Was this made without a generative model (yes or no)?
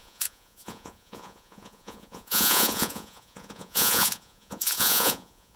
no